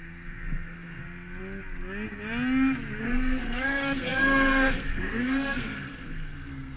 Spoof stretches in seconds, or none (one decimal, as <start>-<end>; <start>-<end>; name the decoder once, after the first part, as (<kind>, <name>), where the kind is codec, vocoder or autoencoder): 0.0-1.0 (codec, SNAC); 3.0-6.8